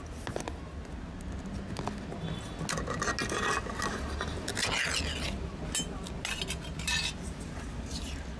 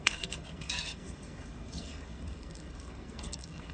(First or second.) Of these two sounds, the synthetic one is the second